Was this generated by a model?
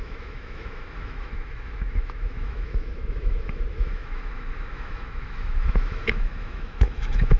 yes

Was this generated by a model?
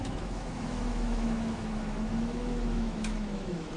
yes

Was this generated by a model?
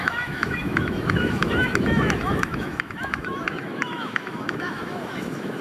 yes